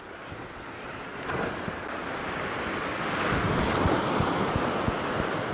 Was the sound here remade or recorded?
recorded